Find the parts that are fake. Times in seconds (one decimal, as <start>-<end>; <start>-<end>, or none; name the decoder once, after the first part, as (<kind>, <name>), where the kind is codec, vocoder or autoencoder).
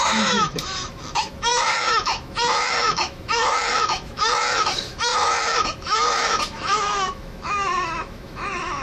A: 0.0-8.8 (autoencoder, DAC-VAE)